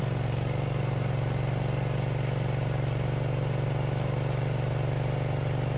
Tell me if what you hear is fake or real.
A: real